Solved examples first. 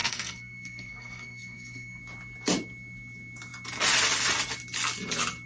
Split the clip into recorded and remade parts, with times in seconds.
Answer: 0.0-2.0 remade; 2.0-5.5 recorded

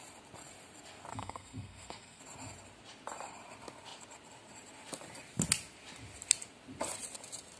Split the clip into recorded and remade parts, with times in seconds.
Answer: 0.0-1.1 recorded; 1.1-2.2 remade; 2.2-7.6 recorded

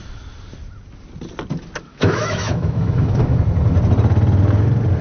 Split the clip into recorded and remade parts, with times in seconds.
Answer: 0.0-1.9 recorded; 1.9-3.4 remade; 3.4-5.0 recorded

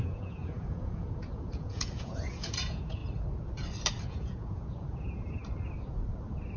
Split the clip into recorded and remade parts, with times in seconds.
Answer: 0.0-3.0 remade; 3.0-4.1 recorded; 4.1-5.4 remade; 5.4-6.6 recorded

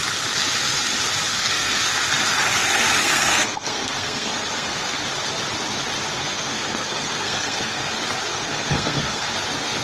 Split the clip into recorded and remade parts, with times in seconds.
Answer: 0.0-1.3 recorded; 1.3-1.9 remade; 1.9-2.6 recorded; 2.6-5.0 remade; 5.0-6.2 recorded; 6.2-7.9 remade; 7.9-8.3 recorded; 8.3-9.3 remade; 9.3-9.8 recorded

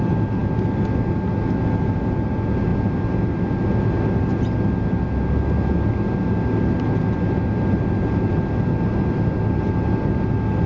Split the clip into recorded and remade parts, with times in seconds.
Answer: 0.0-10.7 recorded

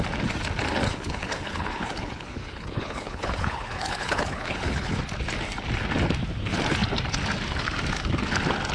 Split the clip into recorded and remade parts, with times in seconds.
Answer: 0.0-0.9 recorded; 0.9-5.0 remade; 5.0-8.7 recorded